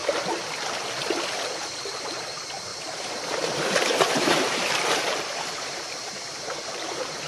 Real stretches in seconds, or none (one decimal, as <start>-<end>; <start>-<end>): 0.0-2.7